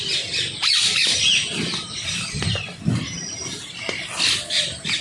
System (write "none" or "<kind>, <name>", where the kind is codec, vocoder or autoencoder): none